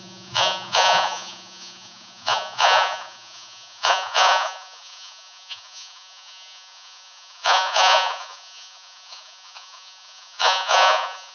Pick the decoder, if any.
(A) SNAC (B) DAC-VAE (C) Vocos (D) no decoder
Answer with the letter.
C